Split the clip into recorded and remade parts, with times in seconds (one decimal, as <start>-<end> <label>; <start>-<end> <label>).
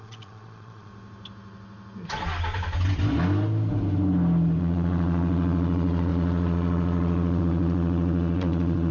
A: 0.0-0.9 remade; 0.9-4.6 recorded; 4.6-8.9 remade